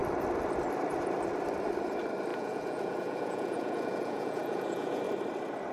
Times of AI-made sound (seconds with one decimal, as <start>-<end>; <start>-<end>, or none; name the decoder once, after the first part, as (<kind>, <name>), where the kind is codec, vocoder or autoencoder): 2.3-5.0 (vocoder, Vocos)